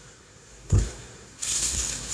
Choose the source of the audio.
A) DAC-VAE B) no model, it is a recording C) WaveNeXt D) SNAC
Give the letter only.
D